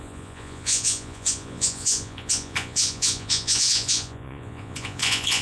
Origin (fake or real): fake